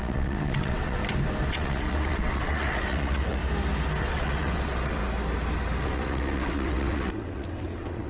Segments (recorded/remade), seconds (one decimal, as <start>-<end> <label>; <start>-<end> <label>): 0.0-1.0 remade; 1.0-1.5 recorded; 1.5-3.4 remade; 3.4-4.0 recorded; 4.0-5.0 remade; 5.0-5.8 recorded; 5.8-8.1 remade